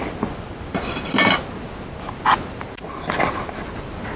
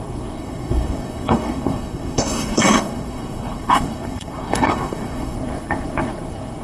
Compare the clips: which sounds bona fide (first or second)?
first